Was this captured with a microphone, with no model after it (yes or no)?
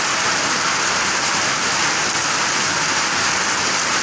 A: yes